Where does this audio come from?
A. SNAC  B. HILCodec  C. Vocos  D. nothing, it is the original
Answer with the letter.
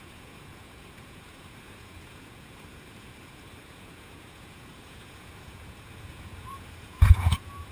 C